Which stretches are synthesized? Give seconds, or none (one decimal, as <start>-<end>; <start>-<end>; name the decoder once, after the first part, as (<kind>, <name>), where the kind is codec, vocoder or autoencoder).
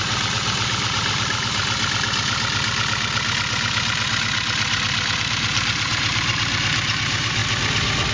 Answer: 0.0-1.6 (vocoder, BigVGAN v2); 5.2-7.4